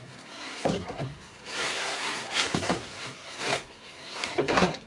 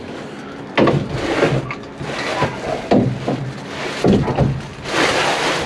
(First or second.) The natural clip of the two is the second